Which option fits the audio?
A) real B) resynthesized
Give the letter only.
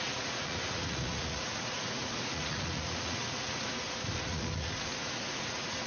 B